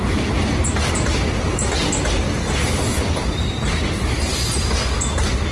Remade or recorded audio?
recorded